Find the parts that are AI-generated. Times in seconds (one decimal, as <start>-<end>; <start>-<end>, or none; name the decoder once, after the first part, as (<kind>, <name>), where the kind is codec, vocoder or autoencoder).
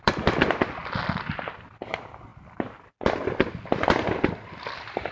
0.0-0.8 (vocoder, BigVGAN v2); 1.7-2.3; 4.3-5.1